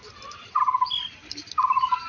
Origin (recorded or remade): recorded